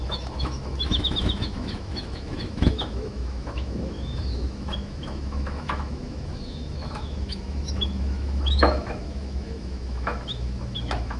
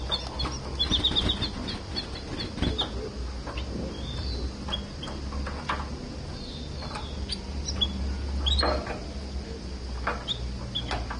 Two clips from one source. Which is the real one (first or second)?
second